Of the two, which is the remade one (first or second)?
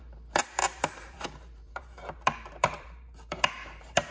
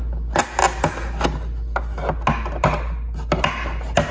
first